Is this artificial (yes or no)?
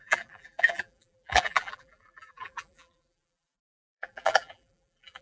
yes